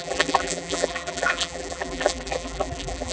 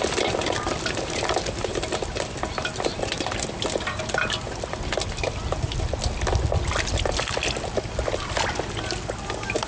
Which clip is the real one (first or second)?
second